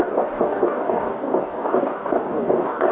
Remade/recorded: remade